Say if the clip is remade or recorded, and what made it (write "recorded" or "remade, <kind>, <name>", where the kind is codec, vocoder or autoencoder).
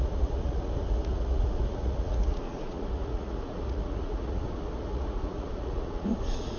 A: remade, vocoder, Vocos